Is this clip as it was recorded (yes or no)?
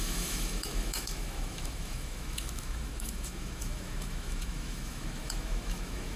no